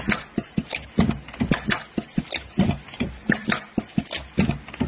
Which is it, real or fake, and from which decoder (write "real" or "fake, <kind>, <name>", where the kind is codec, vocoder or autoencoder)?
real